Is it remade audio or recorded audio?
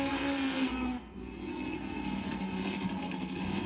remade